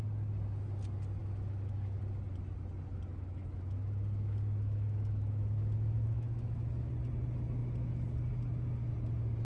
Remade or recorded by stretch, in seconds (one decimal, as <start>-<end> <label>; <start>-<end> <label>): 0.0-1.2 recorded; 1.2-2.0 remade; 2.0-3.1 recorded; 3.1-6.9 remade; 6.9-9.4 recorded